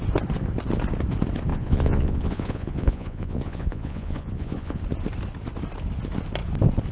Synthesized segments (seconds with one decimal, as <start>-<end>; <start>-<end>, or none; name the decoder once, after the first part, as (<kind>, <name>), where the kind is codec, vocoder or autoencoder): 1.5-4.8 (vocoder, Vocos)